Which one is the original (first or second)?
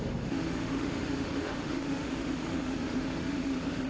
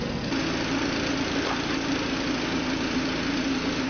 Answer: second